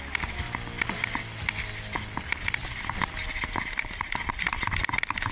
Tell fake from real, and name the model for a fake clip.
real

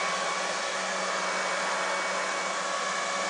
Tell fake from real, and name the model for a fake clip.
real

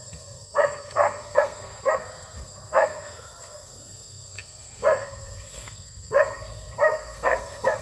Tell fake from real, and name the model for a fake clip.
fake, codec, SNAC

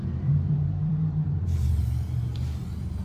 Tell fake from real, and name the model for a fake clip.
fake, vocoder, BigVGAN v2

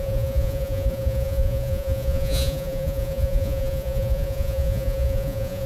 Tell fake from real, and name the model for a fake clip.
fake, vocoder, Vocos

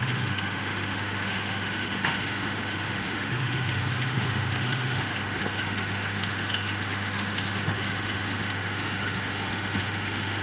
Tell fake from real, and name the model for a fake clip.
fake, autoencoder, DAC-VAE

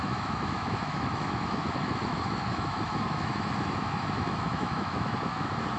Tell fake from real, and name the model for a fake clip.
fake, autoencoder, DAC-VAE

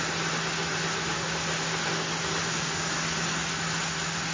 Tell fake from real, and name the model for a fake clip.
real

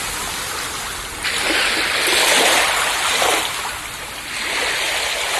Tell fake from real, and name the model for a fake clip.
real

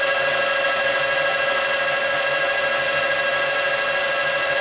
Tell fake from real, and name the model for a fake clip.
real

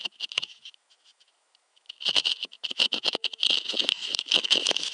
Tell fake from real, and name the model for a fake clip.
fake, autoencoder, DAC-VAE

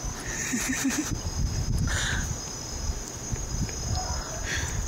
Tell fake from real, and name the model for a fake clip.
real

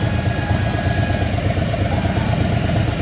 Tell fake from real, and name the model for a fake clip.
real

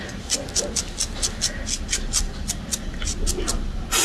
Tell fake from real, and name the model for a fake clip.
real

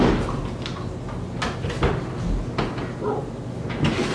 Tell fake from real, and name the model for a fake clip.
real